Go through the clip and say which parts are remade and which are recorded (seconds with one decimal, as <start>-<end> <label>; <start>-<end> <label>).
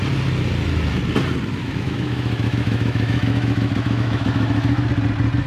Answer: 0.0-1.6 recorded; 1.6-4.9 remade; 4.9-5.5 recorded